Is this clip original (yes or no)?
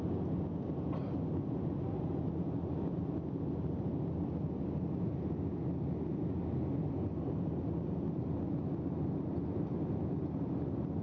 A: yes